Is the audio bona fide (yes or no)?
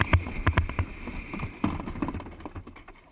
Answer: yes